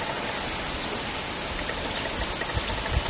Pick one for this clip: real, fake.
real